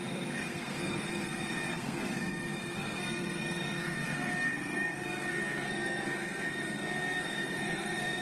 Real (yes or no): no